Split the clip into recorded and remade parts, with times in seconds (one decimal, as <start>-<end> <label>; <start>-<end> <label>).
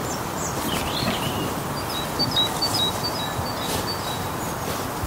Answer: 0.0-5.1 recorded